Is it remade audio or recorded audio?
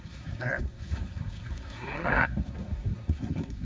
remade